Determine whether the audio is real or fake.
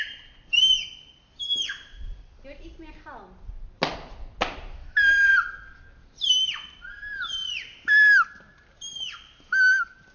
real